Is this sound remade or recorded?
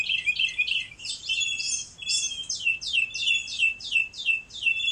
recorded